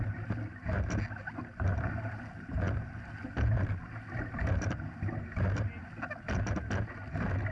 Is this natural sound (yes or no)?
yes